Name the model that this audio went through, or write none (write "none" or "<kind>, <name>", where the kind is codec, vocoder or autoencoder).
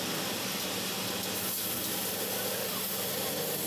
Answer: none